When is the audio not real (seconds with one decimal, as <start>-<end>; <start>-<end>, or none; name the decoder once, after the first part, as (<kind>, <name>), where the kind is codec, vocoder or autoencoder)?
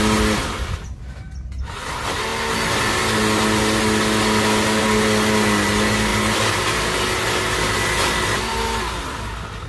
none